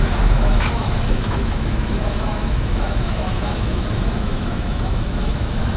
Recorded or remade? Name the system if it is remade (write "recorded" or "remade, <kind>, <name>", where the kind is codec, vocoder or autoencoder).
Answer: remade, autoencoder, DAC-VAE